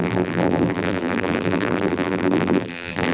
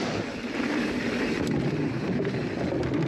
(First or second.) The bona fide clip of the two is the second